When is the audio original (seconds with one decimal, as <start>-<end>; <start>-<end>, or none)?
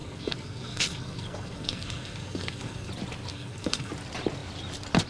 2.9-3.3; 3.9-5.1